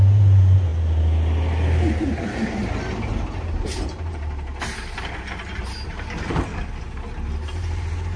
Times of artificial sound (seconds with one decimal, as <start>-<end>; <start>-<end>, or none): 0.0-0.7; 3.6-4.5; 5.6-6.5; 7.5-8.2